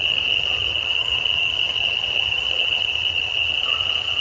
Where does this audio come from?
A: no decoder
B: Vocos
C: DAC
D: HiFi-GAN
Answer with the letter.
D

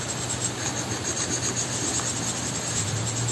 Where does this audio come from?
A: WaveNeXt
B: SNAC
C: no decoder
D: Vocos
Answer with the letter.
C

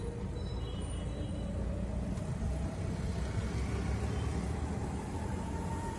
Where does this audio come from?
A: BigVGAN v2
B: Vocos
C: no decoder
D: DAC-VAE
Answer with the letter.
C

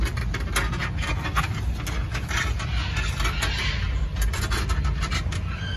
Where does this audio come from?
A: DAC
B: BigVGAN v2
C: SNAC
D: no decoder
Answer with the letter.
D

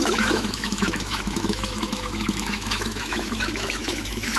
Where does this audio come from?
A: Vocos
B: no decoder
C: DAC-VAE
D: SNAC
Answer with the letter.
C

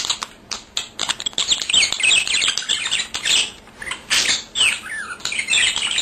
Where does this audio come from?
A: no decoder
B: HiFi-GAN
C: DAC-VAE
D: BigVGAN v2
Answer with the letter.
A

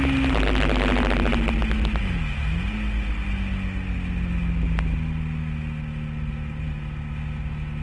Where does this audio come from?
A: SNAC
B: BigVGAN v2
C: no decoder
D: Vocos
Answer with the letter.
C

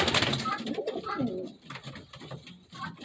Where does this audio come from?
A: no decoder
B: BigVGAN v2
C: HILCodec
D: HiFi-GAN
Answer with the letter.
A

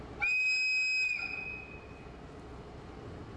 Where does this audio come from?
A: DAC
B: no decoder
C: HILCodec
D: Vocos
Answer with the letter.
B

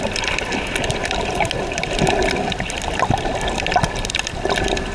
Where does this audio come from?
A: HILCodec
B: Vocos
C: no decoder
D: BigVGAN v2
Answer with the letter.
C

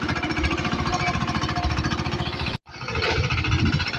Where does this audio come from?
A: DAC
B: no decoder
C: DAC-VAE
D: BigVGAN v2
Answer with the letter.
B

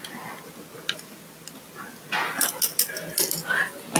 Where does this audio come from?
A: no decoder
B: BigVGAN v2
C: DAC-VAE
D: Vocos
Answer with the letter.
A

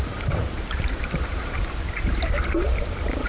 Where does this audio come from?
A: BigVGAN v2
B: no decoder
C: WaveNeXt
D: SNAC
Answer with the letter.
A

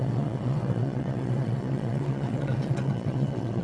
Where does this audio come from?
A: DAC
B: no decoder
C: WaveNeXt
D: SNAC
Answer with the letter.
C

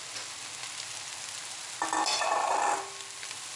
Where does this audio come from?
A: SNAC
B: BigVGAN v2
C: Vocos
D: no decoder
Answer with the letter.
D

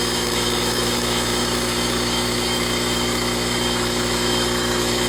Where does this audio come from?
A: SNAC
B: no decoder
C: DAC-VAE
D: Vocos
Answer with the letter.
C